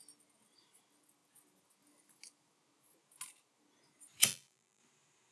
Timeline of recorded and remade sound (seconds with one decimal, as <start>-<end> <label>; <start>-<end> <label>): 0.0-4.3 recorded; 4.3-4.8 remade; 4.8-5.3 recorded